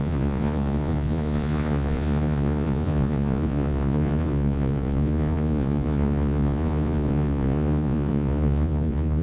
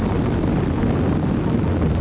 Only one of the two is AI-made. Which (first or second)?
first